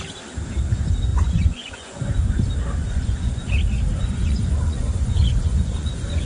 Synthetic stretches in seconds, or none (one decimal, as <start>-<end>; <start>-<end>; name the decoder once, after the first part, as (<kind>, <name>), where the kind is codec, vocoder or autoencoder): 1.1-2.3 (vocoder, Vocos); 2.8-3.5; 3.9-6.3